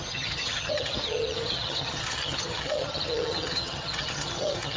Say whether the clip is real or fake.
fake